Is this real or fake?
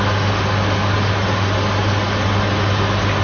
real